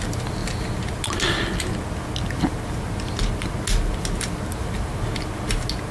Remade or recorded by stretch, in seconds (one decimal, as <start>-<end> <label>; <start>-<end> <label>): 0.0-5.9 recorded